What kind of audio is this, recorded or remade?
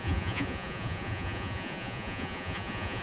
remade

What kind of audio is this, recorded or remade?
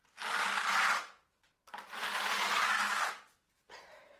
recorded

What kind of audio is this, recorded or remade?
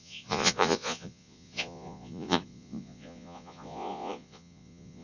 remade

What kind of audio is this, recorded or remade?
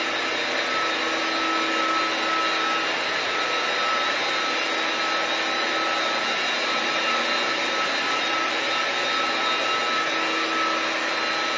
recorded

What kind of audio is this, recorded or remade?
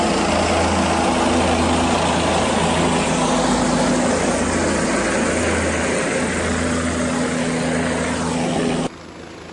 recorded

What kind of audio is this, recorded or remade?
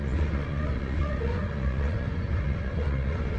remade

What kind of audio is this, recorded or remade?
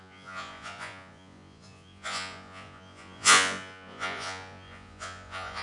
remade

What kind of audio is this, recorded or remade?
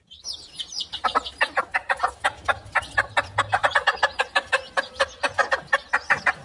recorded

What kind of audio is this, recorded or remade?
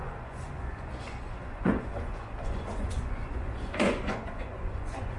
remade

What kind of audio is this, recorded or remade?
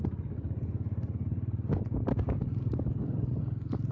recorded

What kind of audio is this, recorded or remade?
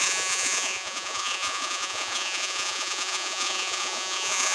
remade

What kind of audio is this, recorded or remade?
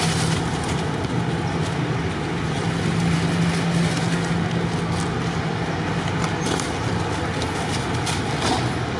recorded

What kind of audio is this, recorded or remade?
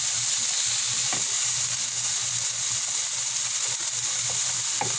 recorded